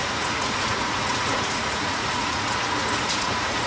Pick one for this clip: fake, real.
fake